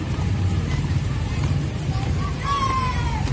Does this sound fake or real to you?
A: fake